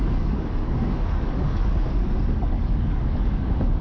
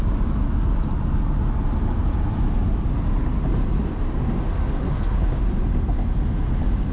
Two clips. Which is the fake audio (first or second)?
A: first